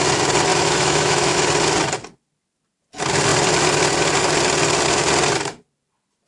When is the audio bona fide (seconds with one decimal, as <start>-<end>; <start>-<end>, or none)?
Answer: 0.0-0.5; 1.4-6.3

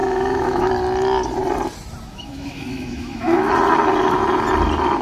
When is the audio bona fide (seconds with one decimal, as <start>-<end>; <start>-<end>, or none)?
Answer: 0.7-2.1; 3.5-5.0

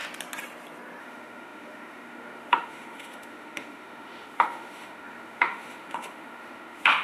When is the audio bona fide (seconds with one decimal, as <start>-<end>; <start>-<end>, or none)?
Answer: 0.0-1.0

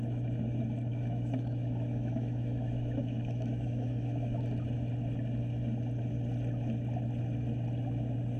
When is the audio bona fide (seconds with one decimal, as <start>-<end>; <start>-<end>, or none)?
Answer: 0.0-0.9; 4.4-8.4

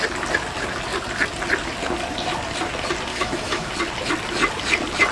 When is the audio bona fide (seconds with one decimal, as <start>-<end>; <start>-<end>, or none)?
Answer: 0.0-3.1; 3.7-5.1

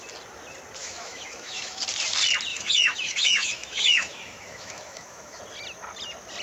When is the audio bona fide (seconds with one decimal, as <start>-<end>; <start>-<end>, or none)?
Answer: 0.0-0.8; 1.8-2.5; 5.4-6.4

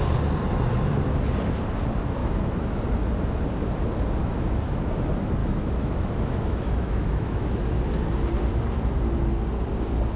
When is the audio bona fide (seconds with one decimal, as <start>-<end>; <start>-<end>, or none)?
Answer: 0.0-2.2; 2.8-4.2; 4.8-5.4; 7.8-10.2